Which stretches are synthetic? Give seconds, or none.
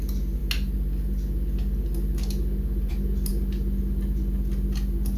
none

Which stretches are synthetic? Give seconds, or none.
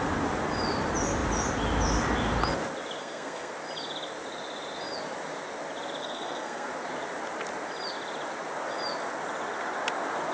3.0-3.5 (codec, SNAC); 6.0-6.7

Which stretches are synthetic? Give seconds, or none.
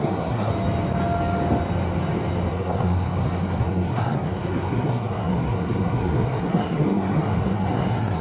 0.0-0.5 (codec, SNAC); 2.5-8.2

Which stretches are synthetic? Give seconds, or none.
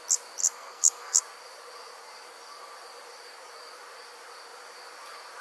0.4-1.2 (codec, SNAC)